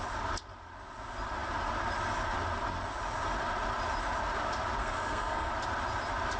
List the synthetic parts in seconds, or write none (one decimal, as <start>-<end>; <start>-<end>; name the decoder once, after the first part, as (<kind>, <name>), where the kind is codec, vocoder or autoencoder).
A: 4.8-5.5 (codec, SNAC)